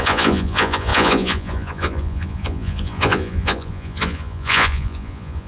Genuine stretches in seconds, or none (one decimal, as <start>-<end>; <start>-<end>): none